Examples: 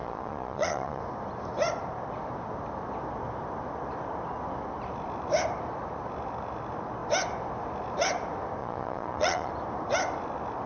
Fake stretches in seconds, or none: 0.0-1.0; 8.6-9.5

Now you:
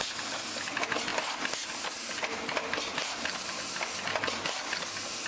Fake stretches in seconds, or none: none

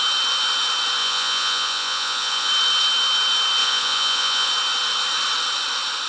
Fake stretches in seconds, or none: 1.0-2.5; 3.6-4.5

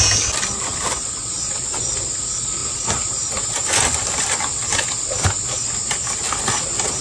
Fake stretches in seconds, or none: none

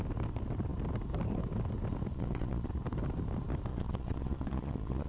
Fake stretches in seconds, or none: 2.1-2.7; 3.7-5.1

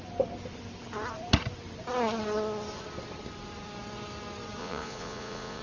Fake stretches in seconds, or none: 4.6-5.6